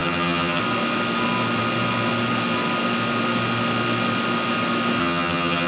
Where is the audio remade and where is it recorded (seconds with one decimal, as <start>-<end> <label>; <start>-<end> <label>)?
0.0-0.6 remade; 0.6-5.0 recorded; 5.0-5.7 remade